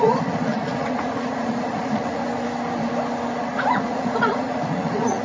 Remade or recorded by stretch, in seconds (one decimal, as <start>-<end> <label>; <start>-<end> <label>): 0.0-2.2 remade; 2.2-3.4 recorded; 3.4-5.2 remade